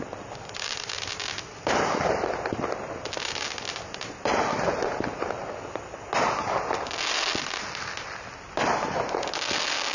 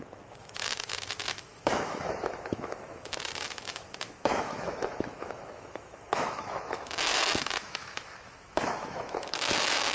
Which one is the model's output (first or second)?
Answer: second